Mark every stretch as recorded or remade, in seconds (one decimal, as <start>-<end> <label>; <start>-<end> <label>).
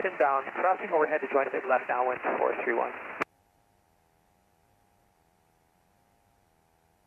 0.0-1.9 remade; 1.9-7.1 recorded